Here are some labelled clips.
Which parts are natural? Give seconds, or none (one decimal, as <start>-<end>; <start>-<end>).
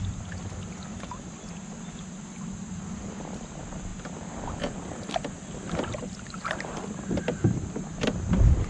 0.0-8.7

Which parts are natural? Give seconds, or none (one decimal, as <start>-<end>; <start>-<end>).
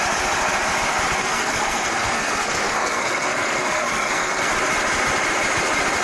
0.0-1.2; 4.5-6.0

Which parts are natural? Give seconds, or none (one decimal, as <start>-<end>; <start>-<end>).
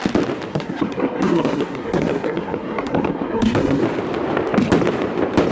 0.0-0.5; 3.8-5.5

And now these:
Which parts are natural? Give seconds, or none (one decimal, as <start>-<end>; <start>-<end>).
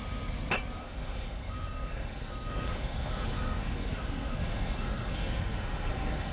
0.0-0.8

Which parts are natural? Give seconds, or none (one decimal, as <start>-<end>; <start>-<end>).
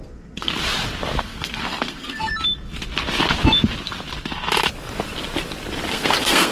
0.5-1.2; 2.3-5.9